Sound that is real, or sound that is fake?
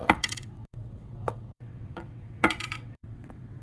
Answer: fake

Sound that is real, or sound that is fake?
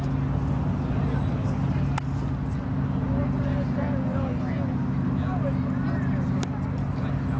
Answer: real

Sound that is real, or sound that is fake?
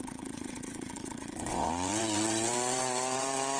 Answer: fake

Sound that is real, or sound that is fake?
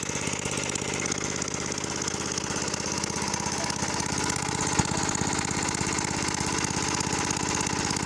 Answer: real